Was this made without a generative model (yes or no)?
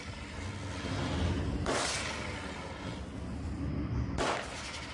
yes